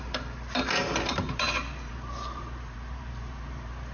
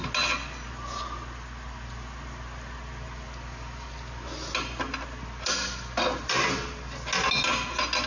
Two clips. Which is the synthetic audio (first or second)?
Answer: first